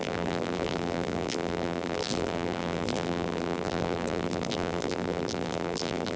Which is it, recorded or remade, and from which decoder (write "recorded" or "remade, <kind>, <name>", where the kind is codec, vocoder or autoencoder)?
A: remade, vocoder, BigVGAN v2